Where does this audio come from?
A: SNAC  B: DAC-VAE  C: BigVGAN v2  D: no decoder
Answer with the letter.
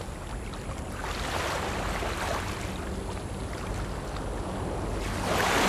D